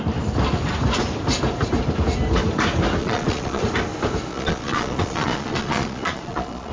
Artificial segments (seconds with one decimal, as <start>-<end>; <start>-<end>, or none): 3.0-3.6; 4.3-6.7